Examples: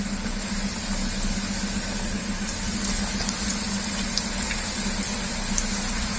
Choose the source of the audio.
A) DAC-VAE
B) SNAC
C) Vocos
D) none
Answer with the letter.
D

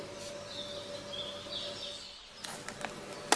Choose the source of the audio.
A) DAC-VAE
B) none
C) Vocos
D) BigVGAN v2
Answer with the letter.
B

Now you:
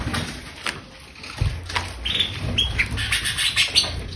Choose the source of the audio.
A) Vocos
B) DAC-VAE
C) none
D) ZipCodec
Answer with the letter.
C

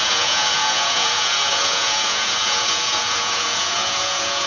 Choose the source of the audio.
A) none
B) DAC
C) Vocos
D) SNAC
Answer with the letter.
C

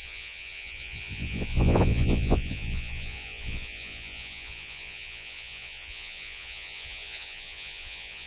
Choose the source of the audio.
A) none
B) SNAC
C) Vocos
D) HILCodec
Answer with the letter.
C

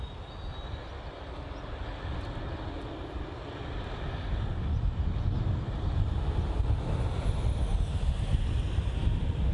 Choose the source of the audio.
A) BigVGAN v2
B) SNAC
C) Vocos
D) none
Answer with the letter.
D